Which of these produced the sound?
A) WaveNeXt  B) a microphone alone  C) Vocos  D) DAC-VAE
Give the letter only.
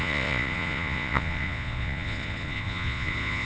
C